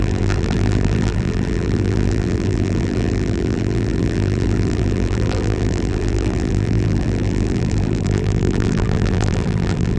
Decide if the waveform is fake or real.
fake